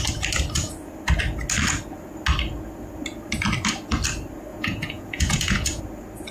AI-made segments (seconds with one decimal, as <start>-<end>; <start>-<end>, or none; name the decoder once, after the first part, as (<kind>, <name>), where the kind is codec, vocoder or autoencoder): 4.5-5.8 (vocoder, Vocos)